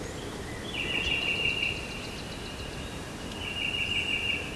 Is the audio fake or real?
real